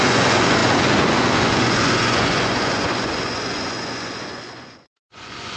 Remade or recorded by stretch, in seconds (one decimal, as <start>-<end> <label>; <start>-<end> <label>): 0.0-5.6 remade